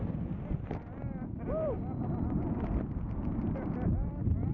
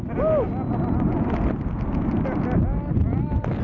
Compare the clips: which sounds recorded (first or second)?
second